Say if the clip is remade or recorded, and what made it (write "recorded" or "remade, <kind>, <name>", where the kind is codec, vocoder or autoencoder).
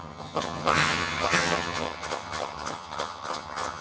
remade, vocoder, HiFi-GAN